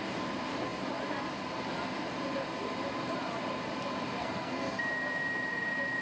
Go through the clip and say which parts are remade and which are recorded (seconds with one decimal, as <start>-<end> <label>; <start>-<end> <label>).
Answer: 0.0-4.2 recorded; 4.2-4.8 remade; 4.8-6.0 recorded